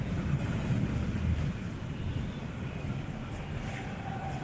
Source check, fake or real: real